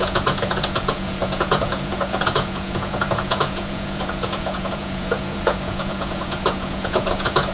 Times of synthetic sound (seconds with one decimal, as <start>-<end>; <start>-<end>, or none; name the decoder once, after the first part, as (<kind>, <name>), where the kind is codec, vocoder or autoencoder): 0.0-7.5 (vocoder, Vocos)